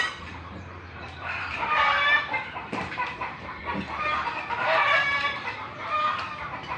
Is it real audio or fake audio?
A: fake